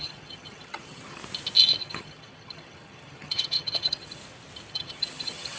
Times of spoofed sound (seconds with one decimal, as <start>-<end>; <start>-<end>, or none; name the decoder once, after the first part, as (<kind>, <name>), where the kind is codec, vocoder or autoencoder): 0.0-1.2 (vocoder, HiFi-GAN); 1.8-4.2; 4.7-5.6